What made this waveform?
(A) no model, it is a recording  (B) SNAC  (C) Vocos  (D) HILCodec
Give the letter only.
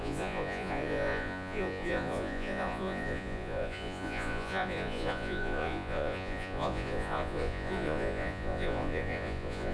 C